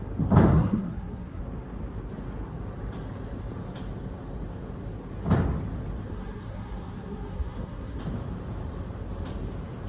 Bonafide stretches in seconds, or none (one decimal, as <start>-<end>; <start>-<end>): 0.0-0.5; 1.4-6.1; 8.0-9.9